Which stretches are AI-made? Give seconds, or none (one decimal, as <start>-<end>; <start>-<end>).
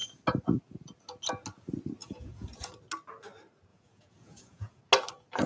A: 2.0-2.7; 3.7-4.8